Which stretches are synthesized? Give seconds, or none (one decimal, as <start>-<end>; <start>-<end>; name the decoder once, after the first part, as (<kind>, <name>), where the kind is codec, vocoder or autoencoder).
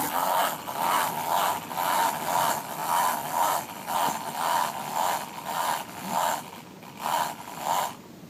none